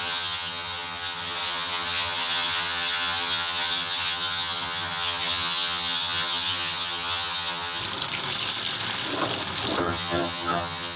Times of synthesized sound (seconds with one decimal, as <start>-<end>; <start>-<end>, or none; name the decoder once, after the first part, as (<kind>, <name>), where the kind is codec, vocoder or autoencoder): 0.0-7.8 (vocoder, HiFi-GAN); 9.8-11.0